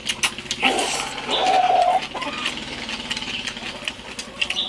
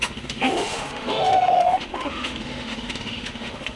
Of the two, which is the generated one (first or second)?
second